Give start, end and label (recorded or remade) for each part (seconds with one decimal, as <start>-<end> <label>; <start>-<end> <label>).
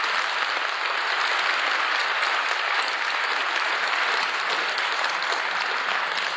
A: 0.0-2.0 recorded; 2.0-5.8 remade; 5.8-6.4 recorded